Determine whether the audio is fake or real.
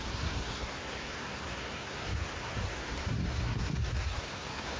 fake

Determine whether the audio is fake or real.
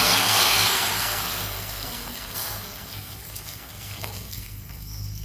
fake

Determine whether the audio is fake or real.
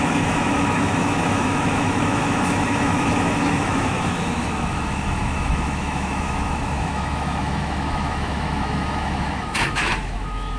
fake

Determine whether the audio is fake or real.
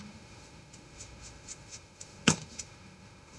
fake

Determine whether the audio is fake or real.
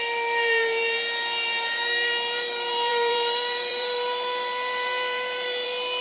fake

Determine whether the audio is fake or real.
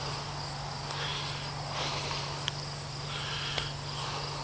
real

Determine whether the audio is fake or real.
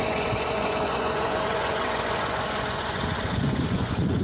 fake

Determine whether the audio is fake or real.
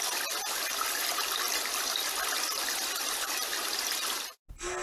real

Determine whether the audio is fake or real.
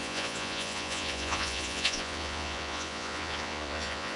fake